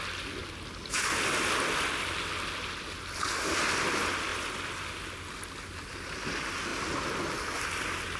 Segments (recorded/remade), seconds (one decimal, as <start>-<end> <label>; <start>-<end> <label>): 0.0-8.2 recorded

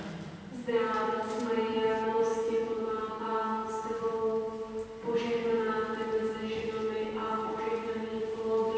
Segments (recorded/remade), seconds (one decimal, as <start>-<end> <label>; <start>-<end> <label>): 0.0-2.3 recorded; 2.3-3.0 remade; 3.0-8.8 recorded

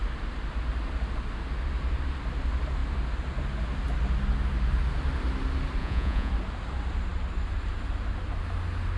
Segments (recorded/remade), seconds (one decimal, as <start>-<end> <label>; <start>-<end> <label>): 0.0-5.8 recorded; 5.8-6.3 remade; 6.3-9.0 recorded

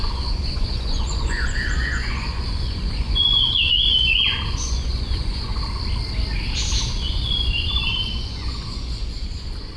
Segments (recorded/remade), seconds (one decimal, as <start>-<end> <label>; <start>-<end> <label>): 0.0-5.5 remade; 5.5-6.9 recorded; 6.9-9.8 remade

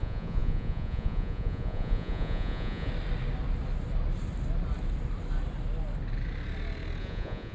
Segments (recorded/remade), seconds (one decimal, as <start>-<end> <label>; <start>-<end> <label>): 0.0-2.9 remade; 2.9-7.0 recorded; 7.0-7.5 remade

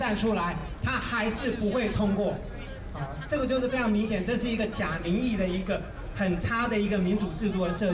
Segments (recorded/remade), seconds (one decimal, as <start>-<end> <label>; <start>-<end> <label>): 0.0-5.6 recorded; 5.6-6.4 remade; 6.4-7.9 recorded

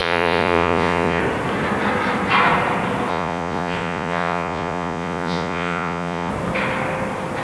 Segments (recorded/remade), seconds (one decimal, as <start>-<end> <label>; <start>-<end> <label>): 0.0-1.2 remade; 1.2-3.1 recorded; 3.1-6.3 remade; 6.3-7.4 recorded